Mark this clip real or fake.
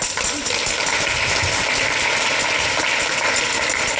real